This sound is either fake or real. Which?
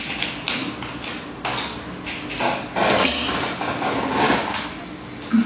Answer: real